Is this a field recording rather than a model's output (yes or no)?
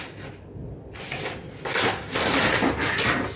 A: no